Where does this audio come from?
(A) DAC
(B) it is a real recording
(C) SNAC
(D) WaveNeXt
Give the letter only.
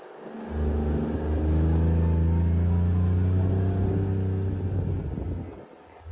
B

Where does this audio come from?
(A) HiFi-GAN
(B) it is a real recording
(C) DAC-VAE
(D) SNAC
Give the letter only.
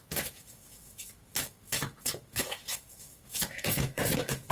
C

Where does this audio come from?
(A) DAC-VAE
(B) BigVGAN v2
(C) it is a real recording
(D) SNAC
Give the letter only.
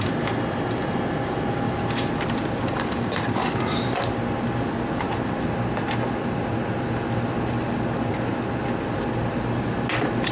C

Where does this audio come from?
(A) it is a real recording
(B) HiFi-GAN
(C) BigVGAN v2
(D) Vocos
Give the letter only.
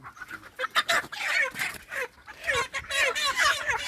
A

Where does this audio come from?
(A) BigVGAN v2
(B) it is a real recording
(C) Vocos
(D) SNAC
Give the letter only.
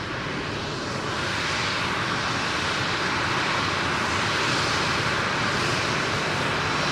B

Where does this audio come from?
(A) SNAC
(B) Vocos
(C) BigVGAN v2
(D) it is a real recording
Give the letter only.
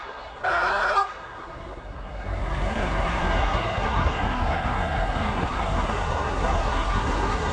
A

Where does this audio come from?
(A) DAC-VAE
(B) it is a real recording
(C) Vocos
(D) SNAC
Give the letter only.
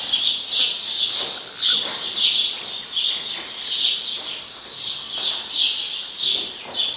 B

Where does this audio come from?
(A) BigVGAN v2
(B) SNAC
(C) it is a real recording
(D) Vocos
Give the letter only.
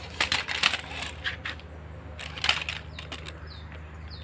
C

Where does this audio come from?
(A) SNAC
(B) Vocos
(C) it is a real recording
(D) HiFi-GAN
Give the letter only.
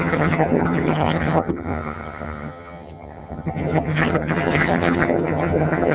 D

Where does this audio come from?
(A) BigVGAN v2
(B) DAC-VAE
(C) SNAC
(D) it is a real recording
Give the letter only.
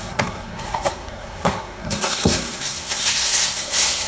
C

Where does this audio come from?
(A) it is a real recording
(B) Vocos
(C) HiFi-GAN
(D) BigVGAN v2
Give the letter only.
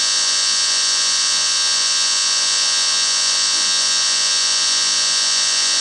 B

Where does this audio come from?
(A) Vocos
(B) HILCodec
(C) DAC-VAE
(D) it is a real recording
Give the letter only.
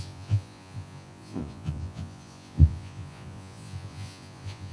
A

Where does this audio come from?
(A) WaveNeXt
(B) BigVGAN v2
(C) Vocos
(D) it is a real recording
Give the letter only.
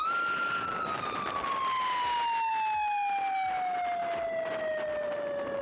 D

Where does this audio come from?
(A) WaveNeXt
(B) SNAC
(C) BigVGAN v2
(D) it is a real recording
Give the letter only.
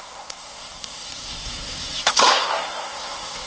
B